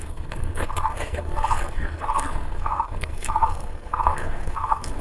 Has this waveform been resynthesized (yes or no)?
yes